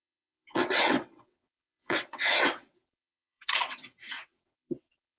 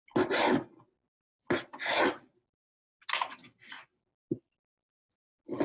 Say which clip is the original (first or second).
second